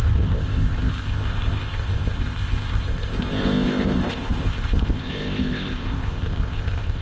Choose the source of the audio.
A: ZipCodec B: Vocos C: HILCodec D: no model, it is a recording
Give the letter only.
A